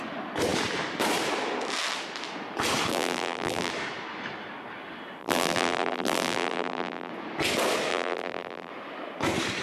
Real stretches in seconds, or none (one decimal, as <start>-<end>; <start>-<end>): 0.0-2.9; 3.7-5.2; 7.1-7.9; 8.7-9.6